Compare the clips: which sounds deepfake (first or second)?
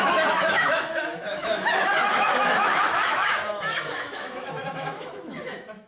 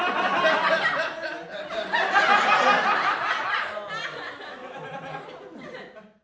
first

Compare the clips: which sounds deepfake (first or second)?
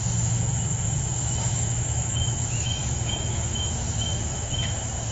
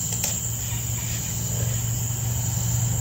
first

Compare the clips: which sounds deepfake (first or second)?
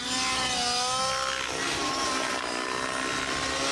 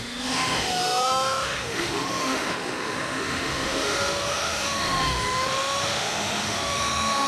second